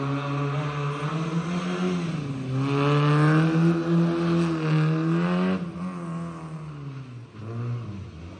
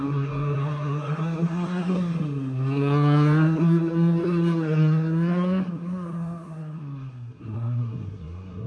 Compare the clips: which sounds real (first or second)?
first